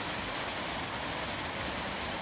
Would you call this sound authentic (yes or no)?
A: yes